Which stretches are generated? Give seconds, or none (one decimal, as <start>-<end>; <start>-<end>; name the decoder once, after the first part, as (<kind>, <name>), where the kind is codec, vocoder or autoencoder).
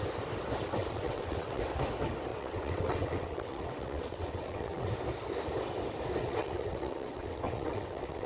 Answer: 0.8-1.6 (vocoder, WaveNeXt); 2.3-4.9; 6.2-8.3